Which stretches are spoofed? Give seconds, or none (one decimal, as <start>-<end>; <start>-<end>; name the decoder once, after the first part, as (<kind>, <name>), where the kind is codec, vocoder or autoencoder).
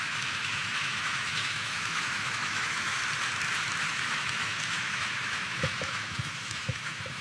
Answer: 0.0-3.0 (autoencoder, DAC-VAE); 3.8-7.2